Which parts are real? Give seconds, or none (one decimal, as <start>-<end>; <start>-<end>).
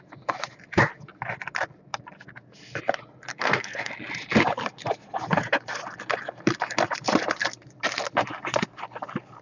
0.0-3.3; 3.9-9.4